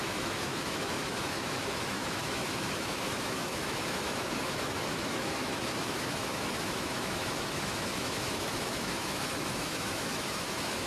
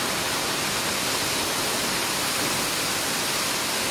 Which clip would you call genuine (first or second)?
second